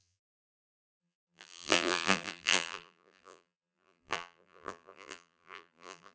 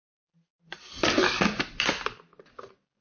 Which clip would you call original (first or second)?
second